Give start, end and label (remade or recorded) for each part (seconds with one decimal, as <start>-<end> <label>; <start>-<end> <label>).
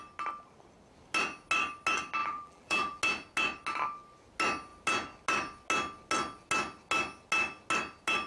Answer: 0.0-2.2 recorded; 2.2-3.0 remade; 3.0-8.3 recorded